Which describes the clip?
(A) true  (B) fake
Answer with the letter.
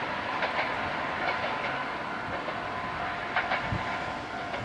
A